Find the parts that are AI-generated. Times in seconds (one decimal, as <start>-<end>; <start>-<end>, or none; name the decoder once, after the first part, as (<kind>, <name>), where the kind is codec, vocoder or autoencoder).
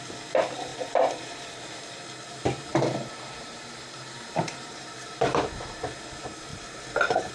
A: 0.7-1.6 (vocoder, BigVGAN v2); 2.7-6.0; 6.5-7.3